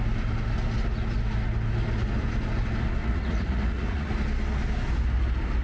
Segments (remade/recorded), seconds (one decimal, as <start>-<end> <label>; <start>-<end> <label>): 0.0-3.0 recorded; 3.0-4.1 remade; 4.1-5.6 recorded